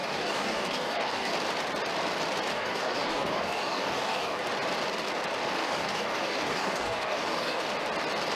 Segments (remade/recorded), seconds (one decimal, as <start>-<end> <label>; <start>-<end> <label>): 0.0-1.3 remade; 1.3-2.5 recorded; 2.5-4.4 remade; 4.4-5.6 recorded; 5.6-7.6 remade; 7.6-8.4 recorded